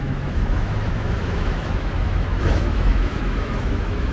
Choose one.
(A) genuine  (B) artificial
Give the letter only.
B